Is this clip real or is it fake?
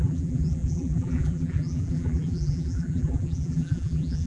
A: fake